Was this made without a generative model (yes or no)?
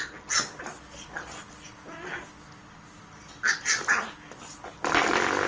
yes